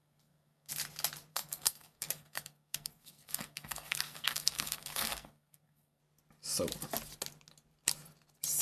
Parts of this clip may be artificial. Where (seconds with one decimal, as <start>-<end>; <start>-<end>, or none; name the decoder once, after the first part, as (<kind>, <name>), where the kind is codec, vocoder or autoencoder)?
0.0-0.7 (codec, SNAC); 1.3-6.0